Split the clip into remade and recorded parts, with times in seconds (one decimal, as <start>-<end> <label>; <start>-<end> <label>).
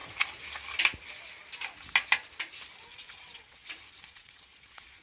0.0-2.9 recorded; 2.9-5.0 remade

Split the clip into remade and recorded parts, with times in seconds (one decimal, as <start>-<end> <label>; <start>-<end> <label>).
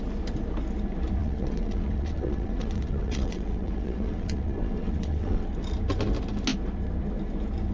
0.0-1.2 recorded; 1.2-5.5 remade; 5.5-7.7 recorded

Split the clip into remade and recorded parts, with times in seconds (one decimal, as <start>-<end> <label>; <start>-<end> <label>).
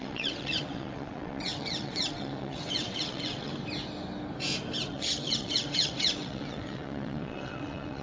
0.0-3.5 remade; 3.5-4.9 recorded; 4.9-8.0 remade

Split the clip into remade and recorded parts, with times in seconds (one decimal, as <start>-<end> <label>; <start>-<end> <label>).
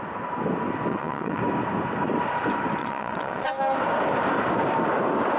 0.0-0.9 recorded; 0.9-1.4 remade; 1.4-2.8 recorded; 2.8-3.5 remade; 3.5-5.4 recorded